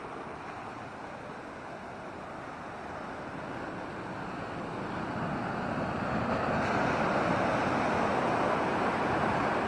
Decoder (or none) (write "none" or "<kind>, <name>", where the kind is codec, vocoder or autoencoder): none